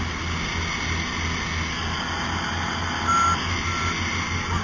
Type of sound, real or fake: real